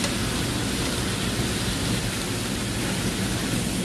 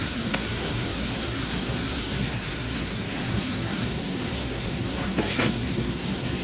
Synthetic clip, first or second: second